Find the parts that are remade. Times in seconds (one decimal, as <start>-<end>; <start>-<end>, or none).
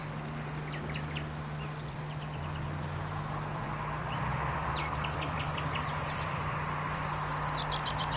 0.0-8.2